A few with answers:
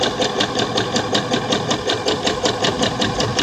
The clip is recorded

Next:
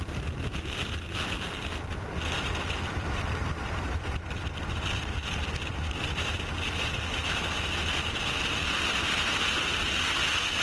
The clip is recorded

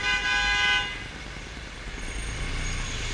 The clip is recorded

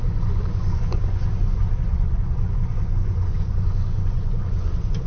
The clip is remade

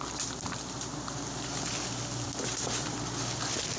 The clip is recorded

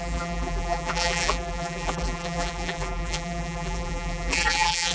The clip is remade